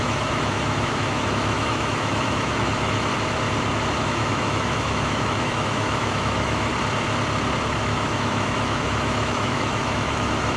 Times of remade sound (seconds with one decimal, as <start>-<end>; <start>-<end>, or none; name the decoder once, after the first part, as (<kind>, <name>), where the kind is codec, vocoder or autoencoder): 0.0-3.1 (autoencoder, DAC-VAE); 4.0-6.7; 7.8-10.6